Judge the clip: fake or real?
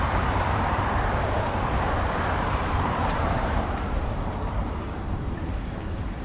fake